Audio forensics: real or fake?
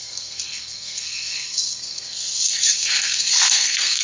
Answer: fake